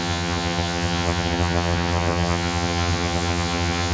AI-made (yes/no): yes